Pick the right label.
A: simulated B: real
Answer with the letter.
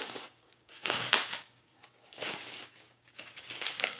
A